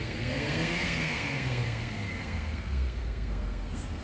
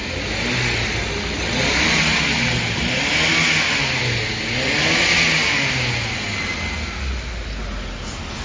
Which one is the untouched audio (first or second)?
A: second